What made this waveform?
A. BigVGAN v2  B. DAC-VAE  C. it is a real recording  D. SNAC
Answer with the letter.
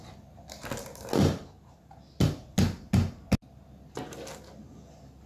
C